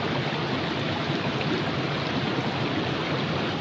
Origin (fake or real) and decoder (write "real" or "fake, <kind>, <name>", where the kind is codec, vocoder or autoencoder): real